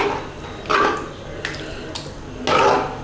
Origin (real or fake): real